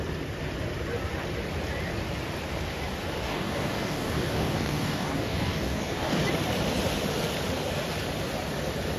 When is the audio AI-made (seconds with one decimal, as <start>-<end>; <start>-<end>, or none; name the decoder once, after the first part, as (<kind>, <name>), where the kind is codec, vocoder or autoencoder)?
3.2-6.2 (codec, DAC)